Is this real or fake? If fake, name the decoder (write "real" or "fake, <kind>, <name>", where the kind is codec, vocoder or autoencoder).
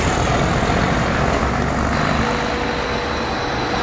real